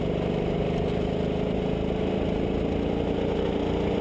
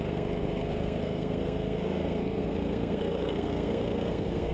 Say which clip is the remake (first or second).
second